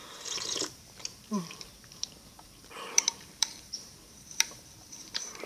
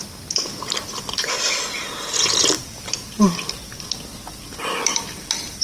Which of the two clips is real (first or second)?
second